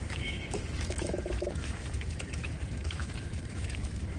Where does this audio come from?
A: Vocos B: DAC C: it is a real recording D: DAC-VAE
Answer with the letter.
D